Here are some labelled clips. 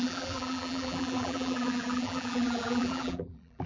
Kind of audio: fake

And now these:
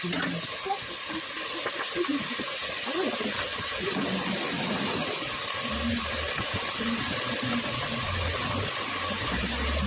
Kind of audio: real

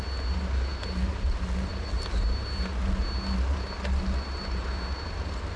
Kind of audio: real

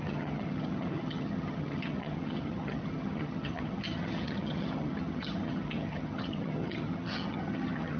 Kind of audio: fake